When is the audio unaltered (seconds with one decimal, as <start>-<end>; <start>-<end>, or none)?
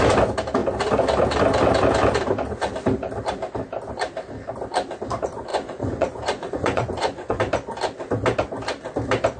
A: 0.0-5.5; 7.4-9.4